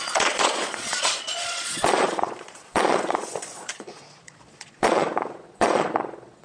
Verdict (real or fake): fake